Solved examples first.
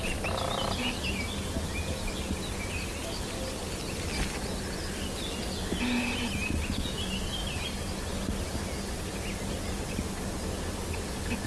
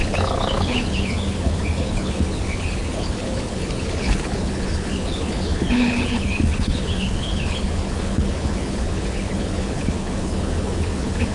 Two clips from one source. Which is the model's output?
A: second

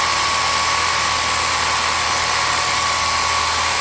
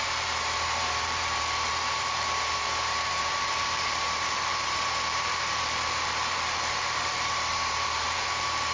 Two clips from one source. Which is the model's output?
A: second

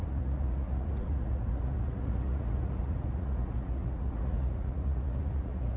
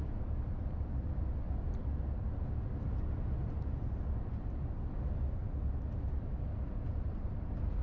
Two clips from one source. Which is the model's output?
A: first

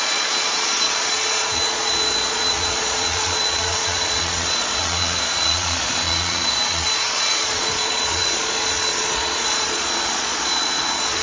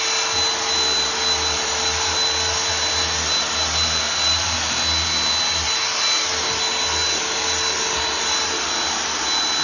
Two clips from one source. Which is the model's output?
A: first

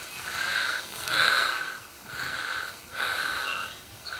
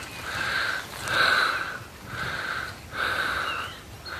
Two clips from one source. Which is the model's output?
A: first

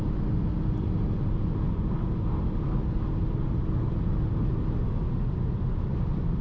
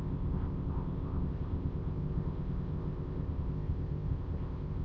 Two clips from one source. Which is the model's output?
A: second